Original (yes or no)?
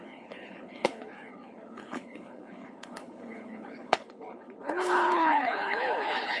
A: no